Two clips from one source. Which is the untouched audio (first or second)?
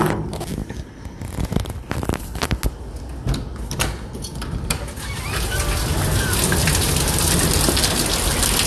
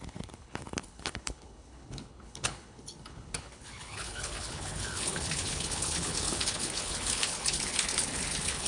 first